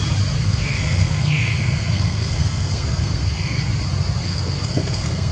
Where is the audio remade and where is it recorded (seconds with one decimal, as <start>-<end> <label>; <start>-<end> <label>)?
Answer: 0.0-0.4 recorded; 0.4-3.6 remade; 3.6-4.2 recorded; 4.2-5.3 remade